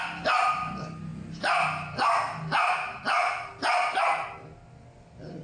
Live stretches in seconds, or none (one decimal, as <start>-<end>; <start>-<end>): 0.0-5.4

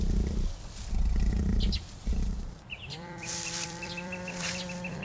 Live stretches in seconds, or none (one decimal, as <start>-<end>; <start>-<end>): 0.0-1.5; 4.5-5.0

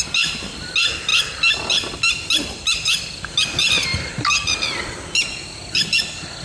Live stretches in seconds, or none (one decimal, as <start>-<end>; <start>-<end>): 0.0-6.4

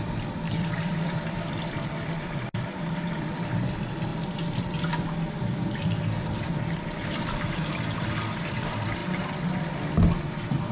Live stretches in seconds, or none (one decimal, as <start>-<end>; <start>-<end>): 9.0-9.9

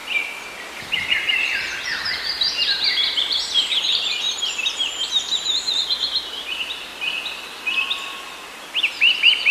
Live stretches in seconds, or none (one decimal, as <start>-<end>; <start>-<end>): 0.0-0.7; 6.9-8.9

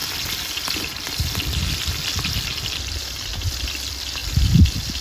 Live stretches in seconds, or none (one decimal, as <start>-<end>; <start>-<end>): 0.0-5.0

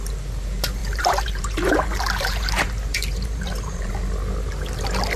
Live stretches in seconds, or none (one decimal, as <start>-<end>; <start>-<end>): 0.0-0.8; 3.9-5.2

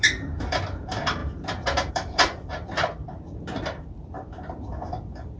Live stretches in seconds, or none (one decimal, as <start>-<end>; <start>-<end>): 1.2-1.9